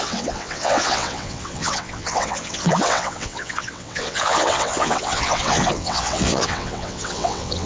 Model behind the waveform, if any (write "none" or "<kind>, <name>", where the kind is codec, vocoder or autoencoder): vocoder, WaveNeXt